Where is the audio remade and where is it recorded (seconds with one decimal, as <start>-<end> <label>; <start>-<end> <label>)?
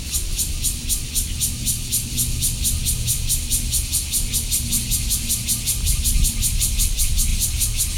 0.0-8.0 recorded